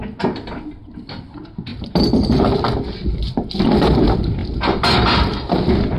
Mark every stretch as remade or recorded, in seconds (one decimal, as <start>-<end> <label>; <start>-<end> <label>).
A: 0.0-6.0 recorded